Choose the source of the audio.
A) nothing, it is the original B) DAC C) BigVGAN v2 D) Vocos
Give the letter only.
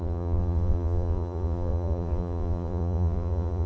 D